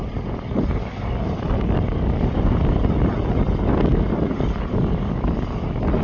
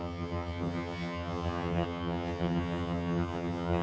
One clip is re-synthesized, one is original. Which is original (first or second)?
first